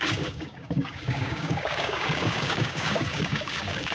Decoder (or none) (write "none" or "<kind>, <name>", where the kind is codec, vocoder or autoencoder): codec, DAC